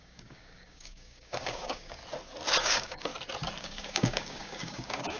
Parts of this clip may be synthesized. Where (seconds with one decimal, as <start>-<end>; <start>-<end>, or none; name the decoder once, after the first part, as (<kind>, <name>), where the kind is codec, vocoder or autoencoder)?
0.0-2.0 (codec, DAC); 2.6-3.1; 3.6-5.2